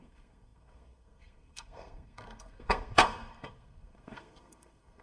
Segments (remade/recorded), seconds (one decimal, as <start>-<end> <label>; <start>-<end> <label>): 0.0-5.0 remade